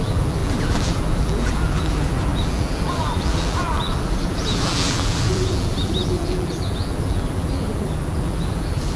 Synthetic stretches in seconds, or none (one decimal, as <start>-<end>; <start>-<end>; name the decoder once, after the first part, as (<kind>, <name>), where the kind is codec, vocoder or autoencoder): 0.0-9.0 (vocoder, BigVGAN v2)